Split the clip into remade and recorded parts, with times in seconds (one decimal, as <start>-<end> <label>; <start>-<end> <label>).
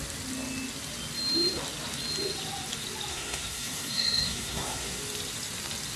0.0-3.1 recorded; 3.1-5.0 remade; 5.0-6.0 recorded